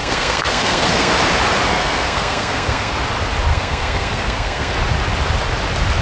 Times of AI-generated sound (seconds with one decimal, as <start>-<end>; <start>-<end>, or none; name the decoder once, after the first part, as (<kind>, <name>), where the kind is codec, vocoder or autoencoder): 0.0-1.1 (codec, SNAC); 1.7-2.9; 3.5-4.7